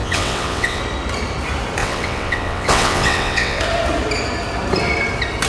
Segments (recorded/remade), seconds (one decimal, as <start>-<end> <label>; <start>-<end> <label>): 0.0-0.8 remade; 0.8-1.8 recorded; 1.8-3.6 remade; 3.6-5.5 recorded